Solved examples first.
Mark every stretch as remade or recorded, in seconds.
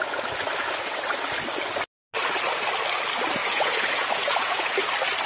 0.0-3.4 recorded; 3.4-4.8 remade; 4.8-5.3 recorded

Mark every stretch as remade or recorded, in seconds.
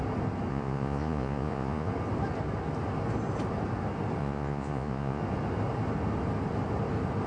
0.0-0.5 recorded; 0.5-1.9 remade; 1.9-4.2 recorded; 4.2-5.2 remade; 5.2-7.3 recorded